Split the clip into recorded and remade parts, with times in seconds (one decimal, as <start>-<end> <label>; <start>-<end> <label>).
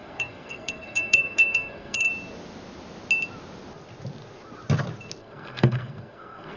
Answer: 0.0-2.1 remade; 2.1-5.2 recorded; 5.2-6.6 remade